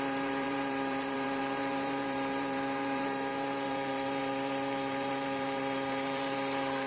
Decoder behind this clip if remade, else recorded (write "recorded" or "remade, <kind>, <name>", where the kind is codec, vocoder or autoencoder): remade, vocoder, BigVGAN v2